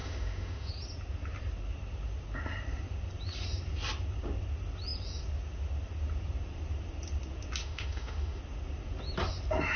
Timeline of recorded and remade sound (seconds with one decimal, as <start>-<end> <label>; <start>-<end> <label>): 0.0-0.7 remade; 0.7-7.6 recorded; 7.6-8.4 remade; 8.4-9.8 recorded